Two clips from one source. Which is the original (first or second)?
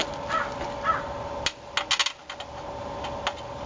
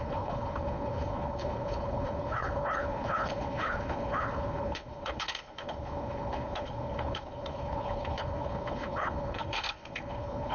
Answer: first